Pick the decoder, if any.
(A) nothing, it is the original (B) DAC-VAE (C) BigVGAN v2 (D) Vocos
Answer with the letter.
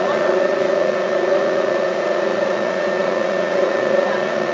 D